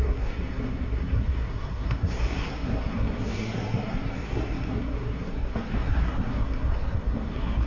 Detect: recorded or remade remade